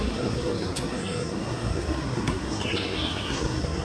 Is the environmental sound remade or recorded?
remade